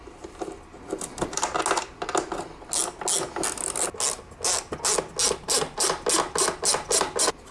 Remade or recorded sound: recorded